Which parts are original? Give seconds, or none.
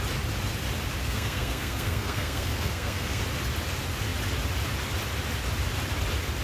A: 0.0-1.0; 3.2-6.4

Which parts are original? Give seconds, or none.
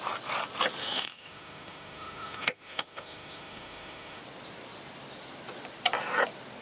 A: 0.0-0.8; 4.2-6.6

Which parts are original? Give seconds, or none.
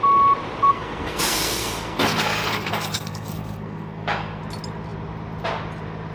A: 0.0-0.7; 4.4-6.1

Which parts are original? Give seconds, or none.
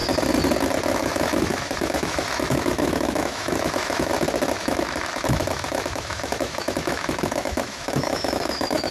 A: 0.0-0.9; 4.1-4.6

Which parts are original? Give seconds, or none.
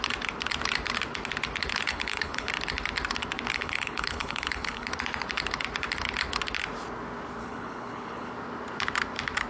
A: 0.0-1.9; 2.5-3.5; 4.9-7.4; 8.3-9.5